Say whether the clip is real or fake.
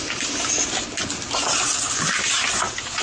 real